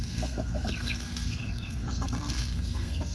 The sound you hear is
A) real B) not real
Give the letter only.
B